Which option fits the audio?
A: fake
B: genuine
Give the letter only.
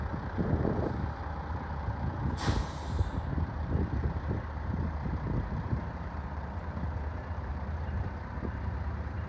A